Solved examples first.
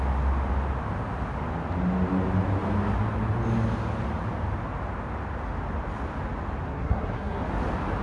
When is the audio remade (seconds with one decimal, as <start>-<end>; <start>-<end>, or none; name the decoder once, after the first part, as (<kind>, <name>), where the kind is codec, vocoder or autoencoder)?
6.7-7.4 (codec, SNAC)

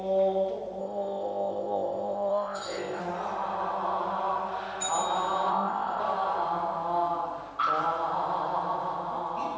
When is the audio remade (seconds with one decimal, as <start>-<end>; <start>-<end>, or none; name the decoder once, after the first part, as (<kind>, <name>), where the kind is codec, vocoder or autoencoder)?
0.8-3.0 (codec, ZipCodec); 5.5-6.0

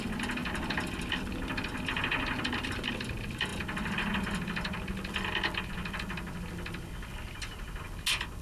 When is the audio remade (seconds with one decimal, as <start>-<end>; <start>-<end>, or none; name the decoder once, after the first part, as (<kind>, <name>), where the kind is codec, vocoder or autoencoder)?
none